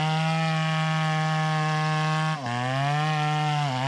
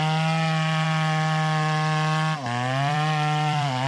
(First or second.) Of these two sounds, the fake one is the second